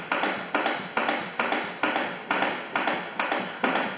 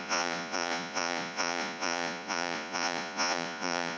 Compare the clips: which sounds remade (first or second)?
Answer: second